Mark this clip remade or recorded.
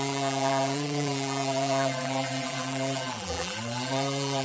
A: remade